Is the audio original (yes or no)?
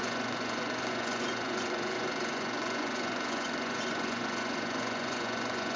no